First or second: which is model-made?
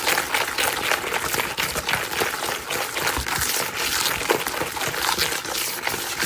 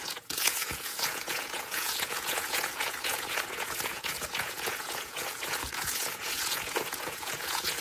second